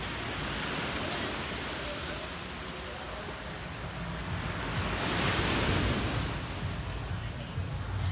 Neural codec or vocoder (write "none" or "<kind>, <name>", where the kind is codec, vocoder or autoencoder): none